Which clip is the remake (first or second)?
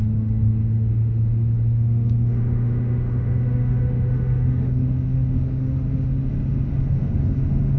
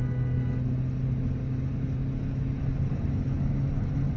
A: first